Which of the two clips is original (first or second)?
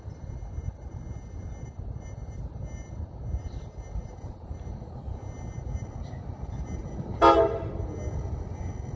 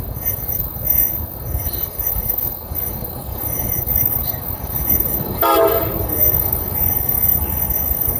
first